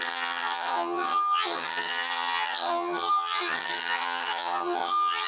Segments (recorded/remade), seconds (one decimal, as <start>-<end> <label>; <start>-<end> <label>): 0.0-5.3 remade